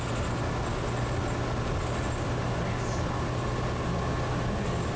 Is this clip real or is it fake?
real